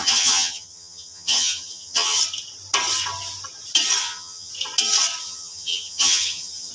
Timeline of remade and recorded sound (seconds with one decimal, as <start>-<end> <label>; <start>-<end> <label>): 0.0-2.2 remade; 2.2-4.0 recorded; 4.0-4.5 remade; 4.5-5.2 recorded; 5.2-6.7 remade